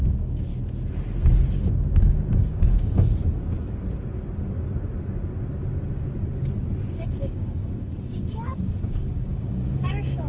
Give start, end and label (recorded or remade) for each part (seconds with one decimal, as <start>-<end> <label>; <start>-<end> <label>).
0.0-0.5 remade; 0.5-1.7 recorded; 1.7-3.2 remade; 3.2-6.9 recorded; 6.9-10.3 remade